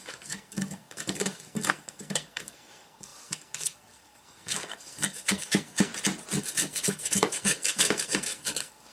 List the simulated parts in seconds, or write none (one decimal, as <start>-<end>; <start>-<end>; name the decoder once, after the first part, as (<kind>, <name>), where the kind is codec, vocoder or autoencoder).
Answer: 0.0-5.9 (codec, SNAC); 6.4-8.9